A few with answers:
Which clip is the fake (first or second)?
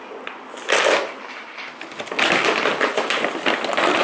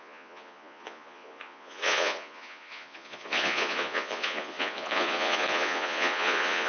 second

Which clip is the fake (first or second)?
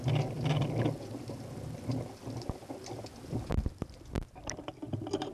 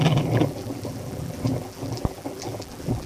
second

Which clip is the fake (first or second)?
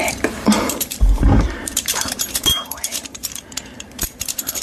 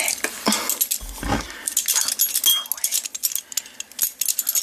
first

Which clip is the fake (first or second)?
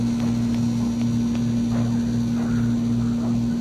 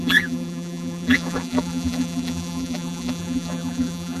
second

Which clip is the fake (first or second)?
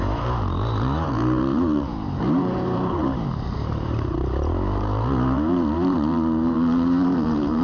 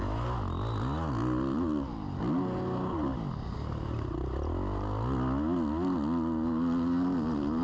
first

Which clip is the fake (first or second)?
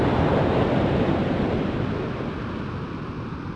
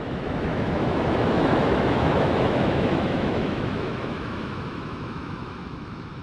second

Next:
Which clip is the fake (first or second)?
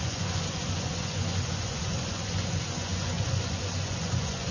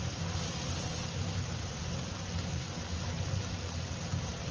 first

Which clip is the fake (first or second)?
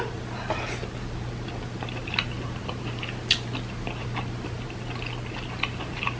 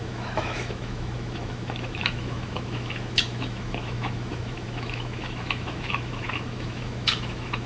second